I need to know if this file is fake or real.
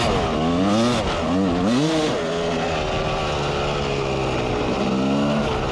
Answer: real